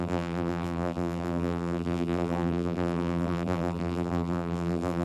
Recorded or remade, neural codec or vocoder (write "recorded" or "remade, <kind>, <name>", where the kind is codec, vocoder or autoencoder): remade, vocoder, BigVGAN v2